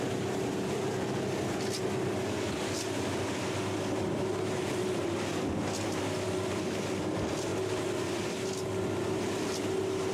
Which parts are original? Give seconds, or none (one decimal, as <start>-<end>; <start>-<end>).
0.0-10.1